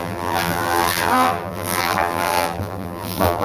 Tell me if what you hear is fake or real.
fake